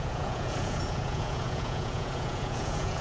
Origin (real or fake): fake